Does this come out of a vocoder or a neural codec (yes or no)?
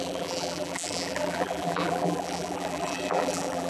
yes